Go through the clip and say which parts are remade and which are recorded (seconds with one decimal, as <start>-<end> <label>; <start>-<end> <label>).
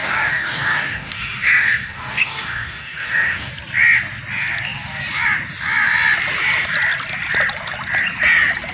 0.0-3.5 remade; 3.5-8.7 recorded